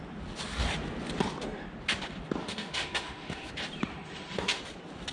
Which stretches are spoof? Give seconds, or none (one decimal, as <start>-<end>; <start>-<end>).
2.4-3.5; 3.9-4.6